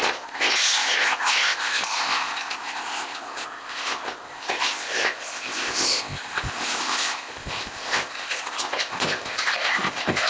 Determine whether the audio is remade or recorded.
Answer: remade